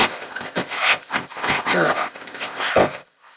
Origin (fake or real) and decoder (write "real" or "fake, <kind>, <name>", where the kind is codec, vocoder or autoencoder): fake, codec, ZipCodec